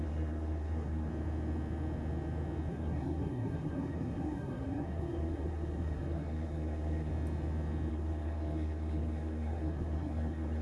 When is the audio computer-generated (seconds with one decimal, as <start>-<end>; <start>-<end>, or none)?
0.0-1.1; 2.7-7.1; 7.9-10.6